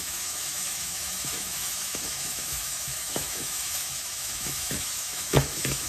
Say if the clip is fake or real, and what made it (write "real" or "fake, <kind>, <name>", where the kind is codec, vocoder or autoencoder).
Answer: fake, autoencoder, DAC-VAE